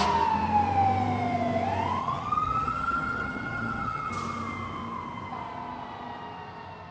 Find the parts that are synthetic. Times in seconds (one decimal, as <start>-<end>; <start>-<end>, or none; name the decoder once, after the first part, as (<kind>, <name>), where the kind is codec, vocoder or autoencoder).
2.0-4.1 (vocoder, HiFi-GAN)